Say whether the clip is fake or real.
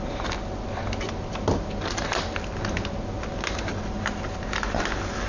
real